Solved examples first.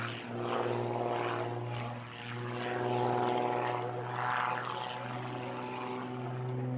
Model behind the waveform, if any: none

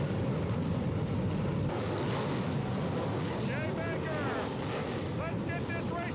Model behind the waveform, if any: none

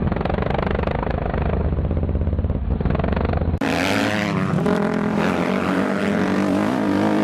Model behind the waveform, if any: none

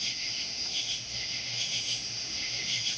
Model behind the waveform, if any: autoencoder, DAC-VAE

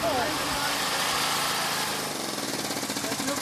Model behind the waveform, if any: none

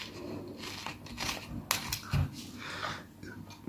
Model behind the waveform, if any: none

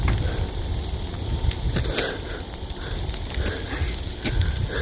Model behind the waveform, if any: none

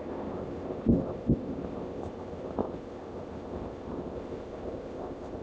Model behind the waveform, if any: codec, ZipCodec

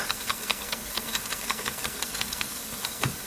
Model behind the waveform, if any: codec, SNAC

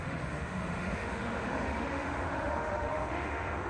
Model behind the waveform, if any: autoencoder, DAC-VAE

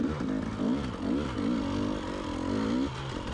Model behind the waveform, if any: none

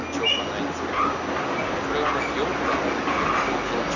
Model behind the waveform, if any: none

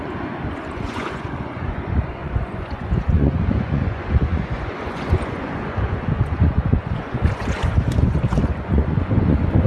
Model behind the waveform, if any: vocoder, Vocos